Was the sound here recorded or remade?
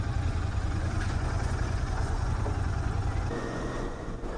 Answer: remade